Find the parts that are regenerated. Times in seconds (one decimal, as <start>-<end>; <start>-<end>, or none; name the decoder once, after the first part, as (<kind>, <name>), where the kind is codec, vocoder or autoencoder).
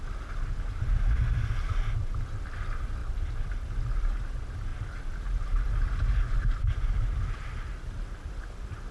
3.0-3.5 (vocoder, BigVGAN v2)